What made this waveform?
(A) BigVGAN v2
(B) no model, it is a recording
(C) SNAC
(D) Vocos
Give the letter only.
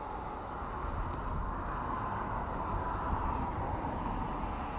B